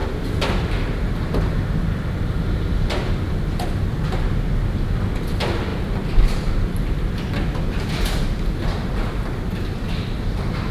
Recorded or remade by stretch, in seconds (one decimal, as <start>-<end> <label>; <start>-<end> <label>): 0.0-5.7 recorded; 5.7-10.2 remade; 10.2-10.7 recorded